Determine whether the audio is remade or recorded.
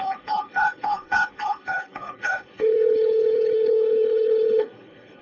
remade